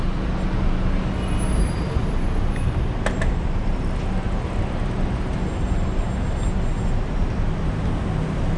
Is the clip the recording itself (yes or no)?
yes